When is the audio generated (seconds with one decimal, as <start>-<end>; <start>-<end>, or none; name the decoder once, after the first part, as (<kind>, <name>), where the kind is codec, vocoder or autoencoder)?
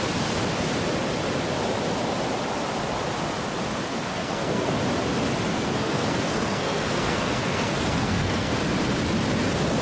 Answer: 3.9-4.7 (codec, SNAC); 5.5-8.5